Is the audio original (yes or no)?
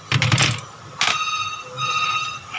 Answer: yes